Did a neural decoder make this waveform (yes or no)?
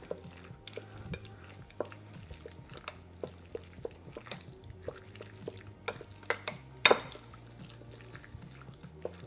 no